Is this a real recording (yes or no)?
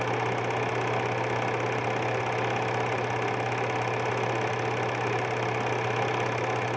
yes